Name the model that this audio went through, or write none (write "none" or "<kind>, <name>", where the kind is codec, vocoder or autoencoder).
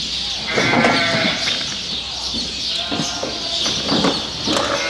none